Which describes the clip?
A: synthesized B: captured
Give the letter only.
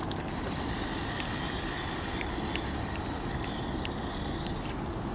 B